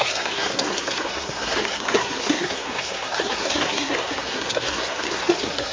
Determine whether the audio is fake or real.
fake